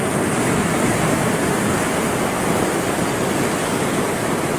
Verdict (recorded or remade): recorded